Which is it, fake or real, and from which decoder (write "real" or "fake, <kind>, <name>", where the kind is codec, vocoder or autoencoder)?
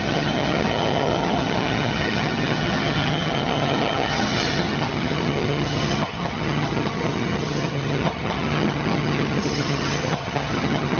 fake, vocoder, HiFi-GAN